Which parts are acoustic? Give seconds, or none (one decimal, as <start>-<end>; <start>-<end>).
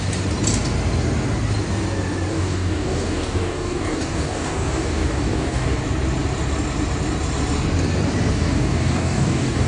0.0-2.3; 5.8-8.3